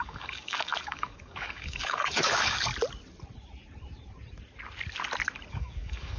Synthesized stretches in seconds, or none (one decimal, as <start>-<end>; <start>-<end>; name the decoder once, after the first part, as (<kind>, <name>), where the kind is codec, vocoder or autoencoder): 0.0-2.7 (codec, DAC); 5.5-6.2